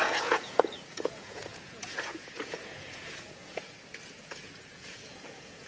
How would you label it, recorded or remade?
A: remade